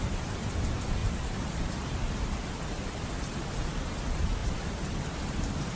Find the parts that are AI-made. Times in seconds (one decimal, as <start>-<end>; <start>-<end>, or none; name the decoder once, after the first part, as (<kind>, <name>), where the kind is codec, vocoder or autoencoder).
1.0-3.1 (vocoder, BigVGAN v2); 4.4-5.0